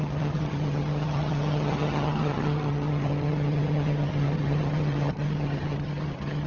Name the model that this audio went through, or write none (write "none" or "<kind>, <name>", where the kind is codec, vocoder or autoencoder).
vocoder, HiFi-GAN